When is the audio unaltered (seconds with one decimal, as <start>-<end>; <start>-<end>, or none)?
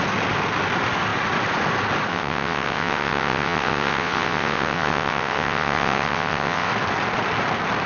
0.0-2.1; 6.7-7.9